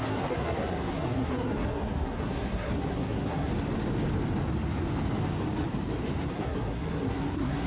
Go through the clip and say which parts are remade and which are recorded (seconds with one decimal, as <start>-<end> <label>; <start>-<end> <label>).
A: 0.0-3.5 remade; 3.5-6.2 recorded; 6.2-7.7 remade